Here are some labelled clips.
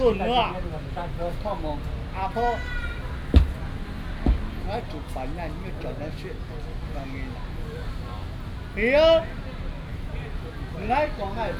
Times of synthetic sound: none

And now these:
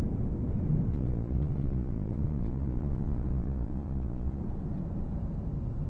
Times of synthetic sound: 0.9-4.4 (vocoder, Vocos)

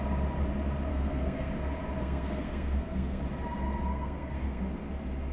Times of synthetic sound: 0.9-1.5 (codec, SNAC); 2.0-3.2; 3.9-4.6

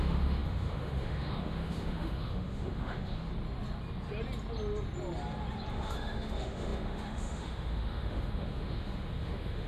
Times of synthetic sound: 0.0-3.3 (autoencoder, DAC-VAE); 5.7-9.7

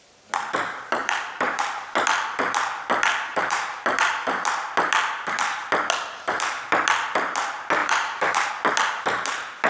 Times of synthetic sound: 1.0-1.6 (vocoder, BigVGAN v2); 3.3-4.1; 7.8-8.5

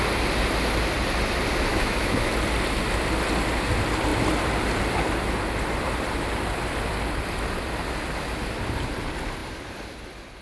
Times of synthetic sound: 1.7-2.3 (autoencoder, DAC-VAE)

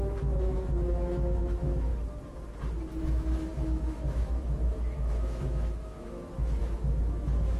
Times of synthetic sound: 0.0-1.9 (autoencoder, DAC-VAE); 3.0-7.6